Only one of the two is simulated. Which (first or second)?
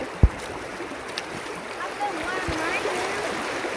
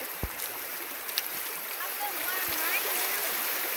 second